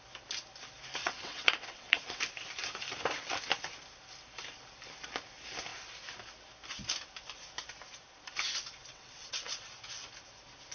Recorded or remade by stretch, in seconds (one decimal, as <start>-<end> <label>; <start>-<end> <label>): 0.0-1.0 recorded; 1.0-2.2 remade; 2.2-8.9 recorded; 8.9-9.7 remade; 9.7-10.7 recorded